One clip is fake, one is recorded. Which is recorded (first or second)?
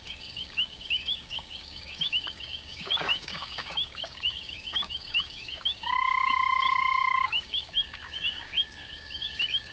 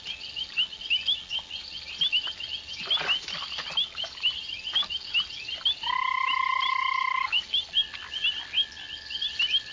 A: second